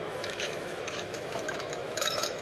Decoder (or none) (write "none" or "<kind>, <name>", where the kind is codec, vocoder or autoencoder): autoencoder, DAC-VAE